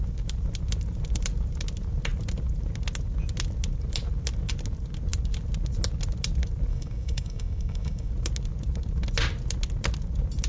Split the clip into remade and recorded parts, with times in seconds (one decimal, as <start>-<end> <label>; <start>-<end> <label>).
0.0-6.7 recorded; 6.7-8.1 remade; 8.1-10.5 recorded